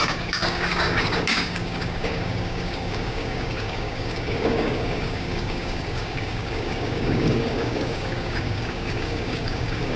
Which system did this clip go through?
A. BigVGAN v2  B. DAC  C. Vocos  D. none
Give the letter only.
B